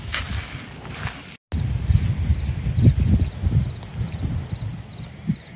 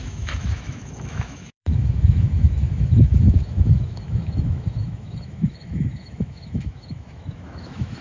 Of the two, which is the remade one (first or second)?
second